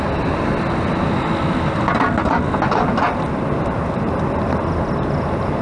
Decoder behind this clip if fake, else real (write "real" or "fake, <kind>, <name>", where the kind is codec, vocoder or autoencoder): real